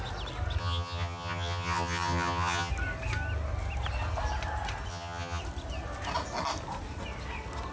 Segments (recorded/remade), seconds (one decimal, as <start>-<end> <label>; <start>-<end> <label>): 0.0-0.6 recorded; 0.6-2.7 remade; 2.7-4.9 recorded; 4.9-5.4 remade; 5.4-7.7 recorded